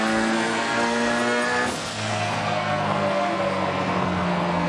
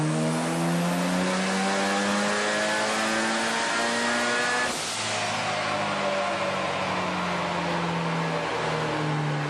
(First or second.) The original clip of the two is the second